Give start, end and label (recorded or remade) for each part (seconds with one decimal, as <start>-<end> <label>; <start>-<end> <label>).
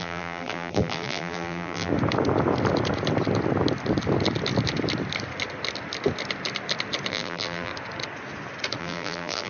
0.0-1.9 remade; 1.9-7.1 recorded; 7.1-7.7 remade; 7.7-8.8 recorded; 8.8-9.5 remade